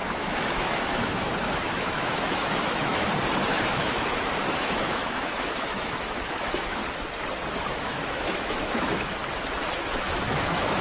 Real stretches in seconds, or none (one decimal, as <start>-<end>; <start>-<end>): 2.9-3.5; 6.8-7.7; 9.2-9.8